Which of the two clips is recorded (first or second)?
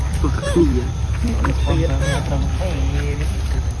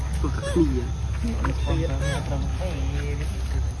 second